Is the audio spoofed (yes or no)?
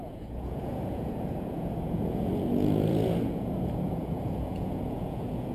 yes